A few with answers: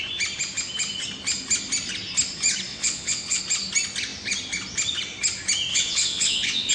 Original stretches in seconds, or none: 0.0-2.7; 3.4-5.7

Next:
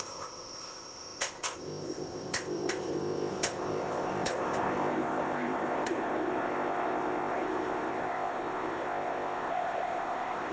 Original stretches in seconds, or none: none